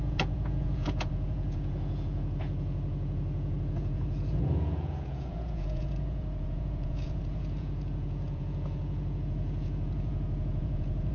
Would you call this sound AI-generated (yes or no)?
yes